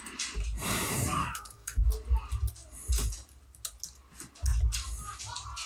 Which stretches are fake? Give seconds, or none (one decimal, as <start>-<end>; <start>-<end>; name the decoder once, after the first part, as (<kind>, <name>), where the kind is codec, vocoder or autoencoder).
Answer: 1.2-1.8 (codec, SNAC)